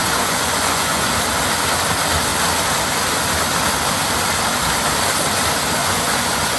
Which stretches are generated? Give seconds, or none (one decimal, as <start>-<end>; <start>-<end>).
0.0-1.1; 5.8-6.6